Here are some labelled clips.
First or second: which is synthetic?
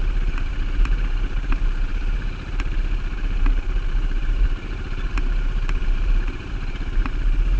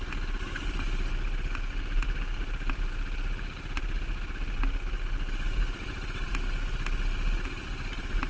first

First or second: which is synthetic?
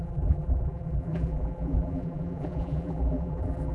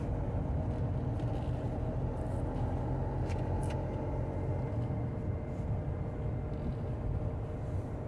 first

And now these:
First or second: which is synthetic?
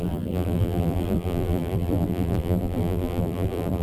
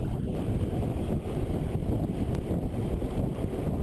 first